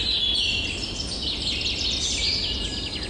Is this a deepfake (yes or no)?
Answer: no